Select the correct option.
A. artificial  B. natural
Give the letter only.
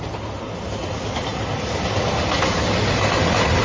B